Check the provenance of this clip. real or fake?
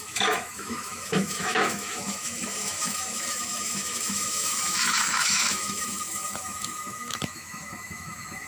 fake